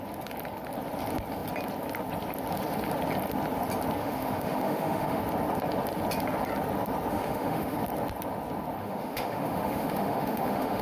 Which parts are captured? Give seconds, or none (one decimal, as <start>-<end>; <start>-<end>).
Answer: 0.0-4.0; 5.2-7.1; 7.8-8.8